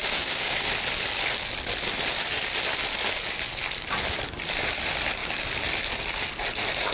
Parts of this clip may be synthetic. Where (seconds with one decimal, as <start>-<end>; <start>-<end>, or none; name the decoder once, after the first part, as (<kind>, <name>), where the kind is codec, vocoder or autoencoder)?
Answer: 0.0-0.7 (codec, DAC)